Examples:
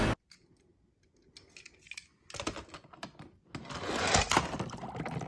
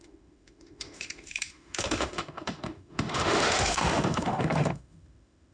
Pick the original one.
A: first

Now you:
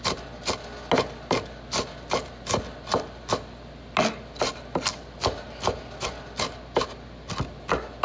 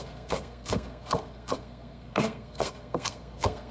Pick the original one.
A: first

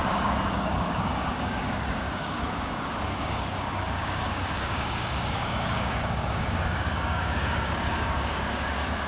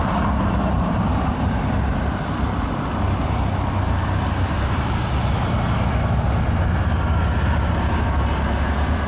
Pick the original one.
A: second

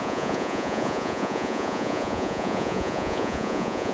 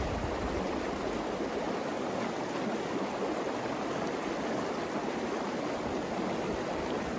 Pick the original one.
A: second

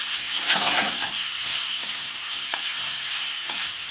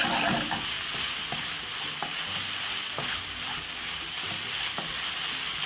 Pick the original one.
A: second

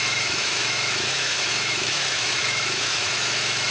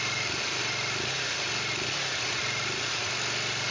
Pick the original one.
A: second